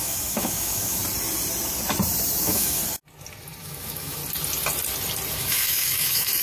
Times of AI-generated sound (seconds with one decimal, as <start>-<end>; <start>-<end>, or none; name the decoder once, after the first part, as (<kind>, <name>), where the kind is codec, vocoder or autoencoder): 0.0-1.0 (autoencoder, DAC-VAE); 2.4-2.8; 3.6-4.2; 5.3-6.4